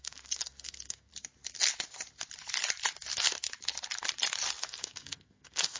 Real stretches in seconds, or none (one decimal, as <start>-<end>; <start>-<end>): 1.1-4.6